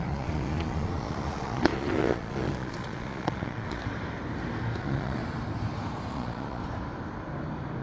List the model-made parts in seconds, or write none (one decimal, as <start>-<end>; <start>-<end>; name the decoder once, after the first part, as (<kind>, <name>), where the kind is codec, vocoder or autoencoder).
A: 0.0-3.8 (vocoder, Vocos); 4.8-5.2; 6.1-6.6